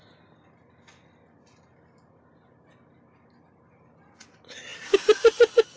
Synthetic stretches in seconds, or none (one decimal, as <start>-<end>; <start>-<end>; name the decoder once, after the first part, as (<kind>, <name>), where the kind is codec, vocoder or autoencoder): none